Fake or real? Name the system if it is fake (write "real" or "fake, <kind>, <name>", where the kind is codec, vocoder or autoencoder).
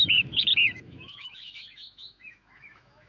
fake, autoencoder, DAC-VAE